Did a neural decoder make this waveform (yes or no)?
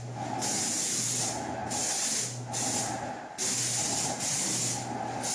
no